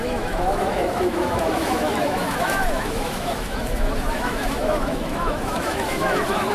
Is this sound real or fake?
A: fake